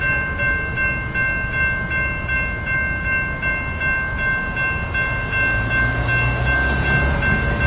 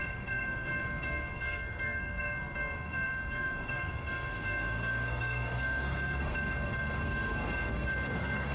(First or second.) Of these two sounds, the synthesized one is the second